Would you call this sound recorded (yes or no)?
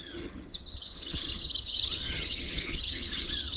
no